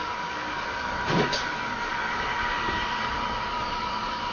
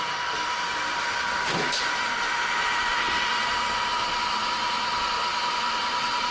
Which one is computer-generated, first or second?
first